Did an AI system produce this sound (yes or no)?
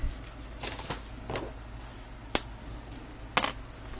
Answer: no